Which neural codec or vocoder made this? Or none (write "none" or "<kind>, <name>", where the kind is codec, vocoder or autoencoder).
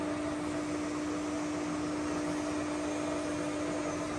none